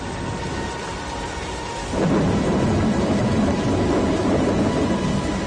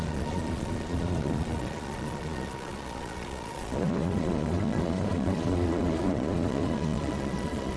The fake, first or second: second